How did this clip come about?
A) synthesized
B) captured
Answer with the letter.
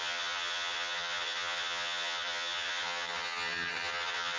A